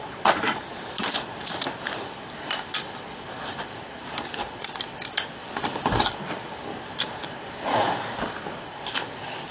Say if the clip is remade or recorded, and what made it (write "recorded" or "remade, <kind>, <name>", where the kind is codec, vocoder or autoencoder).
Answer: recorded